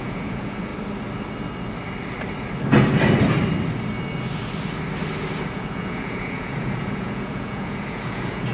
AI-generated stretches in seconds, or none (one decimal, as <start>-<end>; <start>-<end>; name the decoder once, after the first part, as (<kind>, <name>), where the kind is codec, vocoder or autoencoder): 0.0-0.7 (vocoder, Vocos); 5.4-8.5